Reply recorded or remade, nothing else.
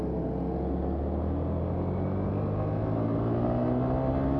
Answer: recorded